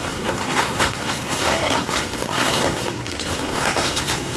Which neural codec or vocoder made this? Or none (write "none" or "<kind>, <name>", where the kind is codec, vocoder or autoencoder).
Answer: codec, SNAC